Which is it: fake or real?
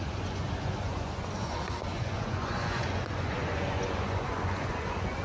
fake